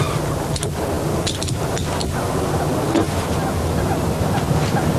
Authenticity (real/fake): real